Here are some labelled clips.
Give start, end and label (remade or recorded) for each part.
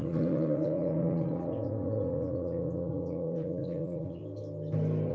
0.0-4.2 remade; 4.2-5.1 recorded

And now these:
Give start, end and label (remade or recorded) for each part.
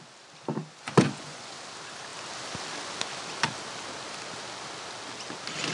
0.0-0.5 recorded; 0.5-1.6 remade; 1.6-5.7 recorded